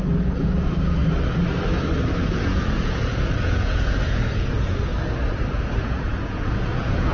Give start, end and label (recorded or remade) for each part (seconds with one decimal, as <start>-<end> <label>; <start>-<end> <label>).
0.0-1.0 remade; 1.0-2.3 recorded; 2.3-4.9 remade; 4.9-5.5 recorded; 5.5-7.1 remade